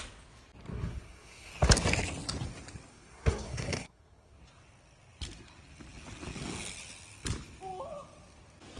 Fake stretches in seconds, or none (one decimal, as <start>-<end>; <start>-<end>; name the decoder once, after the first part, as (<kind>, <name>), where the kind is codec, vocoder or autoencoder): 0.7-1.5 (codec, SNAC); 2.9-4.4